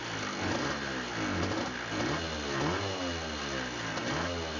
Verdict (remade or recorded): recorded